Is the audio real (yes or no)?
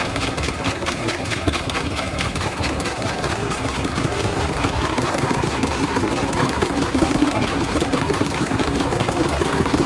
no